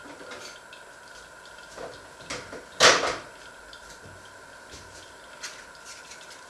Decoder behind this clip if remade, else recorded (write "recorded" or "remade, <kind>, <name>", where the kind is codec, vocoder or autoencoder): recorded